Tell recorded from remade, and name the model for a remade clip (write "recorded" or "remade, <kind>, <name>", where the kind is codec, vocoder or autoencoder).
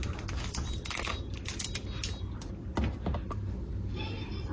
recorded